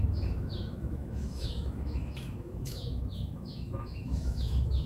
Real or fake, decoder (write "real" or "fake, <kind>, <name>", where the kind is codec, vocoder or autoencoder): fake, autoencoder, DAC-VAE